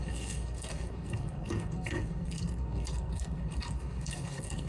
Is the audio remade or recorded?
remade